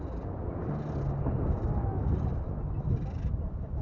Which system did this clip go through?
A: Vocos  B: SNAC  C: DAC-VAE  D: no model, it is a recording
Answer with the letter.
D